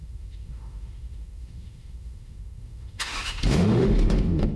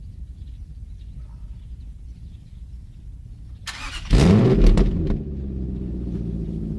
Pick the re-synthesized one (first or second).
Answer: first